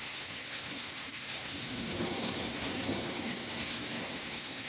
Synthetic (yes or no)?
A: yes